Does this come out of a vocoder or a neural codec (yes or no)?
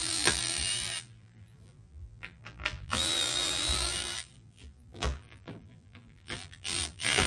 yes